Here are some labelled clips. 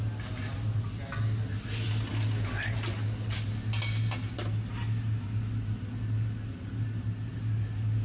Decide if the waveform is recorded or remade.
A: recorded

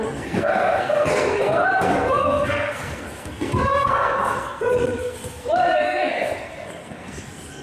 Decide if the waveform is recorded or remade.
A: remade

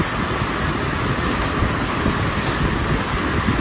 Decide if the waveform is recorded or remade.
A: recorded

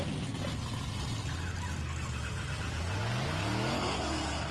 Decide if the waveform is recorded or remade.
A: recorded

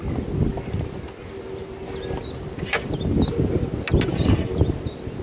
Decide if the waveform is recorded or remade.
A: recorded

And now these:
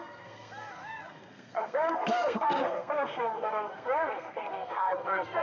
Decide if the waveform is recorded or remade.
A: remade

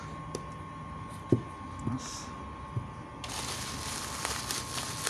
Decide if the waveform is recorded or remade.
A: recorded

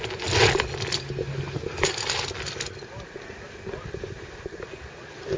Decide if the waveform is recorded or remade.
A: recorded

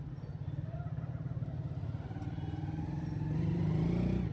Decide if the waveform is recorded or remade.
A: recorded